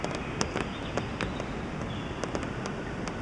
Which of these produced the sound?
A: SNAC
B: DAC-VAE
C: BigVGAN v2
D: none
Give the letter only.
D